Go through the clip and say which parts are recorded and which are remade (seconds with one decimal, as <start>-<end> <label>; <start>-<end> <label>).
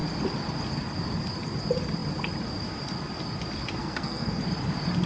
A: 0.0-3.8 recorded; 3.8-4.4 remade; 4.4-5.1 recorded